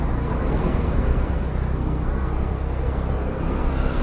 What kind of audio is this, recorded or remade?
remade